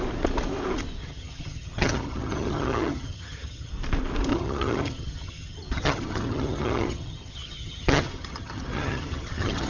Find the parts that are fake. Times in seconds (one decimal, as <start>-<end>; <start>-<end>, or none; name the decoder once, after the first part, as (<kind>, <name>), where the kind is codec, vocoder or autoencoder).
1.0-3.7 (vocoder, HiFi-GAN); 4.3-9.7